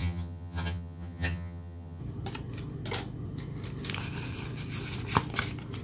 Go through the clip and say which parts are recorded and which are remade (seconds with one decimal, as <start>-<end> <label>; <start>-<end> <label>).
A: 0.0-2.0 remade; 2.0-5.8 recorded